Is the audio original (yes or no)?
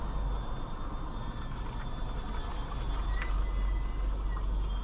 yes